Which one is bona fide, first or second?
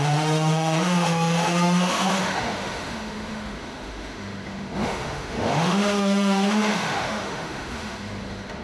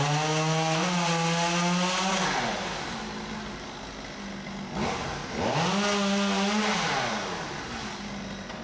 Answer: second